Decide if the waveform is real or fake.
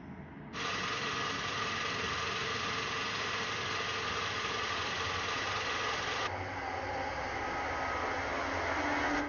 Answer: real